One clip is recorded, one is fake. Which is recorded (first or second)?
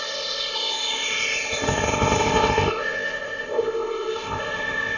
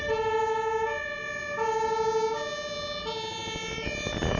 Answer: second